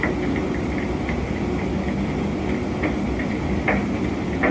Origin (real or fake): real